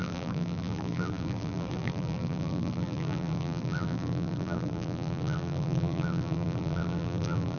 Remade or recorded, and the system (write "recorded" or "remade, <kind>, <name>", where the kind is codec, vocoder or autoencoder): remade, vocoder, BigVGAN v2